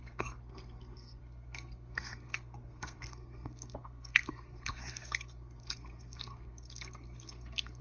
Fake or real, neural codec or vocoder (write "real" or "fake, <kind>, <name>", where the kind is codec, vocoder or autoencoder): fake, codec, SNAC